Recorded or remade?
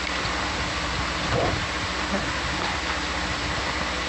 recorded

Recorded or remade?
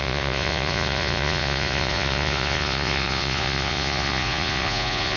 remade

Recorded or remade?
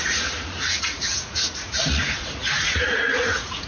remade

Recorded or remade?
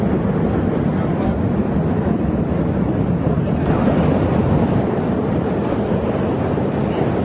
recorded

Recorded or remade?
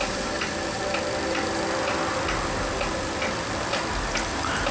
recorded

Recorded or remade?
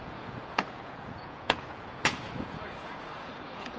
remade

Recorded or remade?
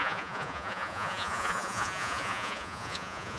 remade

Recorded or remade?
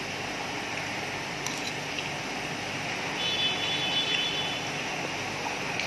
recorded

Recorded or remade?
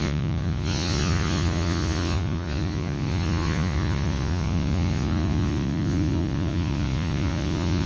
remade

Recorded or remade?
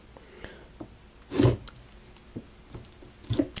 recorded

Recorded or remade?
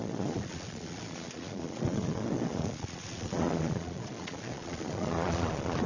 remade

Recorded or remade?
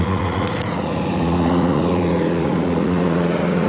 remade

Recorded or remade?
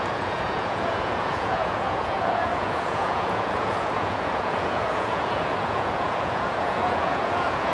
remade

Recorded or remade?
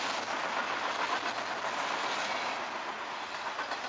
recorded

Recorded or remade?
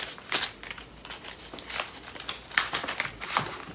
recorded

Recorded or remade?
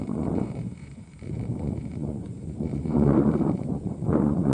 remade